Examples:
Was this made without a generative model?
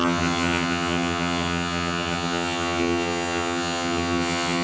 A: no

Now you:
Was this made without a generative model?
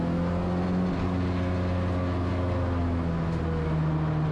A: yes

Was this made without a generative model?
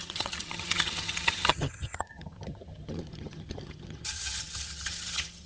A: no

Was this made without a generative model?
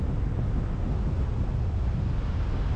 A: yes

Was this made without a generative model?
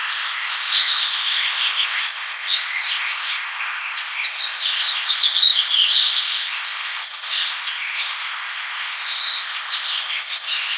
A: no